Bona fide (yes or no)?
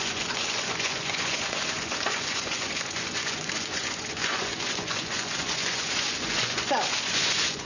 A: no